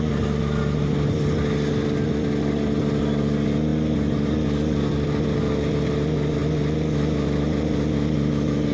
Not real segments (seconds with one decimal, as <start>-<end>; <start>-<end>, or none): none